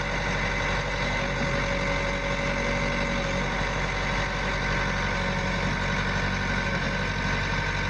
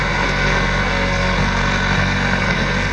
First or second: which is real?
first